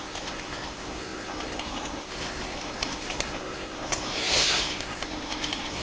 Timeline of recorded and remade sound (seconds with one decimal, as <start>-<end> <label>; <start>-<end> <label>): 0.0-5.8 remade